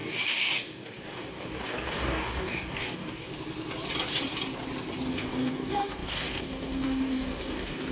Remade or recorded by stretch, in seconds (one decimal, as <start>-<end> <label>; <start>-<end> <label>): 0.0-3.3 remade; 3.3-5.1 recorded; 5.1-7.9 remade